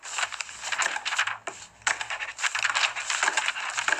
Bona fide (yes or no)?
yes